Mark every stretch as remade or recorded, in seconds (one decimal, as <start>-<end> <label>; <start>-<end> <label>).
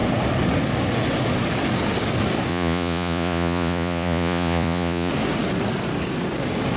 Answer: 0.0-2.5 recorded; 2.5-5.1 remade; 5.1-6.8 recorded